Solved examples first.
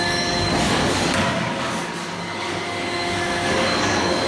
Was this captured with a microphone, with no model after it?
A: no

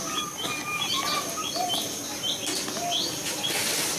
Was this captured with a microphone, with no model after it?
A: yes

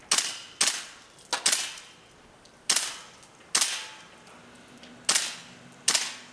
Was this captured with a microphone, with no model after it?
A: yes